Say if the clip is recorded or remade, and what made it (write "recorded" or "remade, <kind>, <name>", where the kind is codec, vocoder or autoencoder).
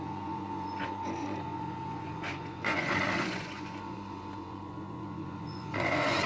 remade, vocoder, Vocos